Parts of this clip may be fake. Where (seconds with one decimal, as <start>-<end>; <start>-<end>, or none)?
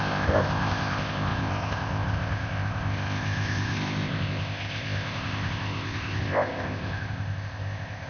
0.0-8.1